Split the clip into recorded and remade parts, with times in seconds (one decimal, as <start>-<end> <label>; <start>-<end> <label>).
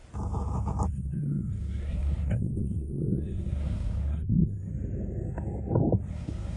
0.0-0.9 recorded; 0.9-4.7 remade; 4.7-6.1 recorded; 6.1-6.6 remade